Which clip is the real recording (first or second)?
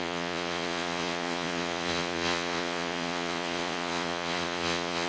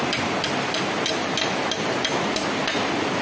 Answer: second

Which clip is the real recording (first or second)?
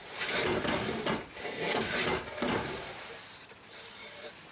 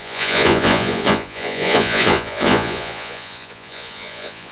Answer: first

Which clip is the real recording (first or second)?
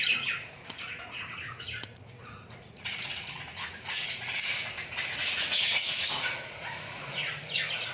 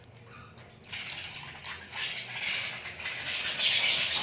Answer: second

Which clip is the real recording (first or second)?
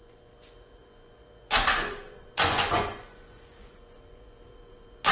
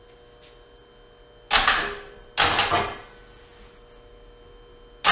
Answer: second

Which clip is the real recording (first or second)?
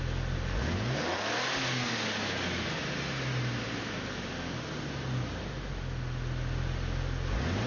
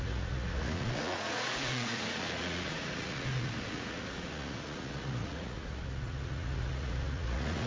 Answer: first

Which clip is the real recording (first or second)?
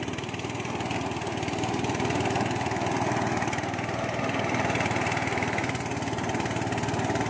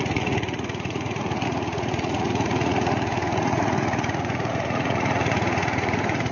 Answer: first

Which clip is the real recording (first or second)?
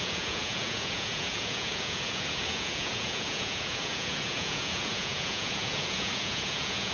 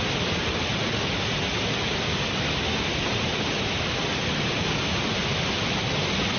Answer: second